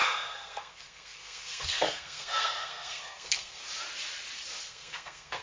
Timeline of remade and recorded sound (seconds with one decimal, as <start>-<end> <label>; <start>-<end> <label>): 0.0-3.6 remade; 3.6-4.6 recorded; 4.6-5.4 remade